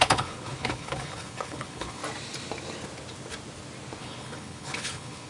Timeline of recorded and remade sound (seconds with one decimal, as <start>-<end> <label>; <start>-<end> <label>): 0.0-2.0 remade; 2.0-4.0 recorded; 4.0-5.3 remade